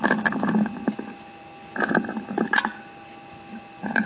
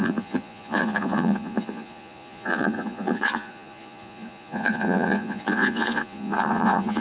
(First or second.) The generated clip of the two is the second